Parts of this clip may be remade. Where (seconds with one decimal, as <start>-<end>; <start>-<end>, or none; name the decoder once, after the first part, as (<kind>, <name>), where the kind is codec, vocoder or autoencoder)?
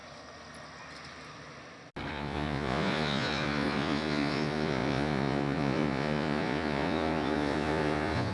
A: 2.1-8.3 (vocoder, Vocos)